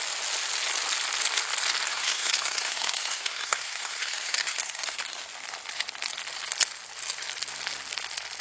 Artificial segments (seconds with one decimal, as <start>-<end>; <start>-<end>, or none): 1.9-5.2